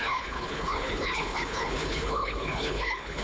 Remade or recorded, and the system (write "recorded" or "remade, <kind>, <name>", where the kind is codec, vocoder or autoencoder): remade, codec, HILCodec